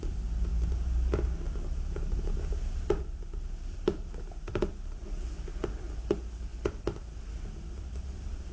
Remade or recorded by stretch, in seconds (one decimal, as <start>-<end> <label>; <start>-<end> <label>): 0.0-8.5 recorded